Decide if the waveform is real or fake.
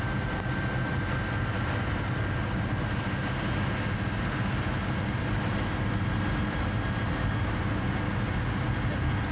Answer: real